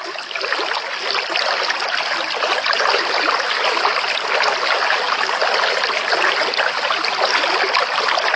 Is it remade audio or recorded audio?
recorded